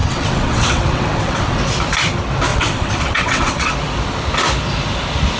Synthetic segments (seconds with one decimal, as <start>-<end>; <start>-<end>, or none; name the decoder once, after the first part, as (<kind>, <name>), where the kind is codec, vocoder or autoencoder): 0.0-1.6 (vocoder, WaveNeXt); 2.5-3.7